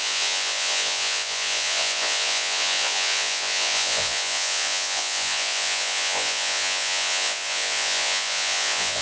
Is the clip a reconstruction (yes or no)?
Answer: yes